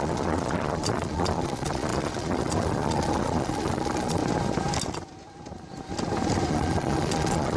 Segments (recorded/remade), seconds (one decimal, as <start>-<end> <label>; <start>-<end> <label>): 0.0-4.2 remade; 4.2-6.5 recorded; 6.5-7.6 remade